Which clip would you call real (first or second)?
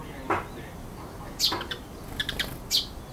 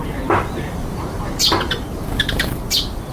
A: first